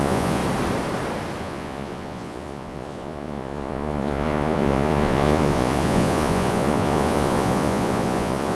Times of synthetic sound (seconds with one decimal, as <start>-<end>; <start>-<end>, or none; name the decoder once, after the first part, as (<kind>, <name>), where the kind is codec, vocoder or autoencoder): 0.0-0.4 (vocoder, Vocos); 1.4-8.5